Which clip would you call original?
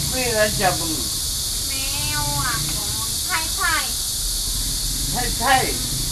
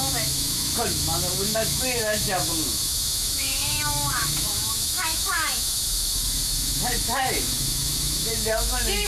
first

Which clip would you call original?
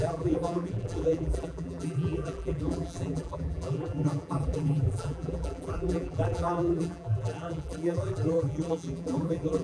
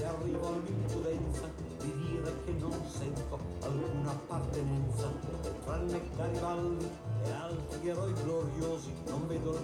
second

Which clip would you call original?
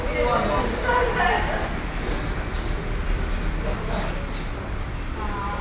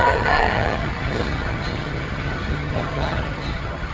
first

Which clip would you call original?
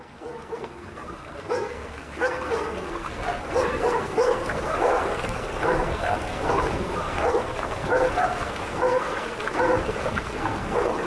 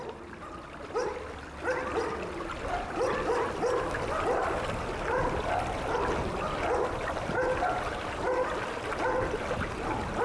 second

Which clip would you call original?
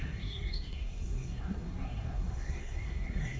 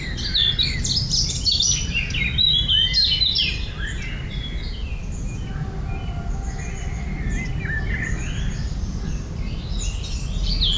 second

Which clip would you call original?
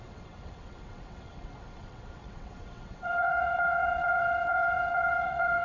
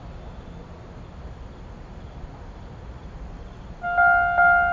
second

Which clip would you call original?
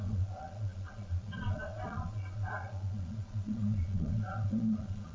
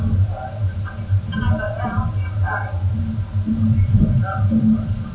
second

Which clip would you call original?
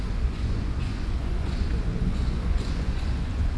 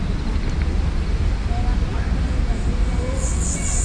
second